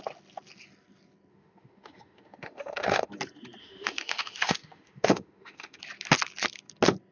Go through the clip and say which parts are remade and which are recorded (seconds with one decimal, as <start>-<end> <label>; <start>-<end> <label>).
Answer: 0.0-1.3 recorded; 1.3-3.1 remade; 3.1-3.6 recorded; 3.6-5.8 remade; 5.8-7.1 recorded